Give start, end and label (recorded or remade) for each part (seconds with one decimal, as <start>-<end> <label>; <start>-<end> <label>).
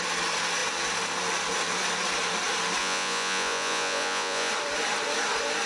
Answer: 0.0-2.8 recorded; 2.8-4.5 remade; 4.5-5.7 recorded